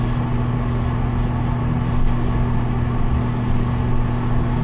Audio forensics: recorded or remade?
recorded